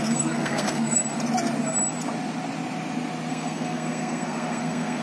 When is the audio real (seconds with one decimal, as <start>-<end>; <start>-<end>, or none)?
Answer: 1.0-3.3